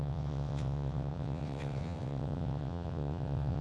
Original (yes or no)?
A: no